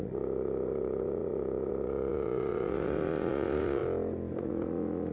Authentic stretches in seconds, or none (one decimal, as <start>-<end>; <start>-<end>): 3.8-4.4